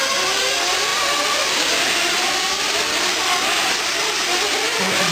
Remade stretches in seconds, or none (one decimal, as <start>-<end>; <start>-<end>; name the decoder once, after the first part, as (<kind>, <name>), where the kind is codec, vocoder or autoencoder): none